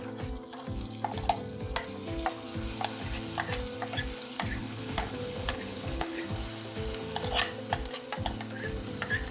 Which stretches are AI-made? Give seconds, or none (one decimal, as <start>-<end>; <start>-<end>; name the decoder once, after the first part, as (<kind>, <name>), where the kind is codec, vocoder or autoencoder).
4.6-6.2 (codec, HILCodec)